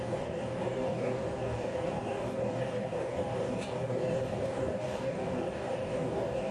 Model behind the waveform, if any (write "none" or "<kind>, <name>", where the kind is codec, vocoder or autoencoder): codec, DAC